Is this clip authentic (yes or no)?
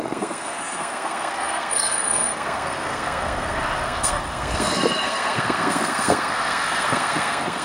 no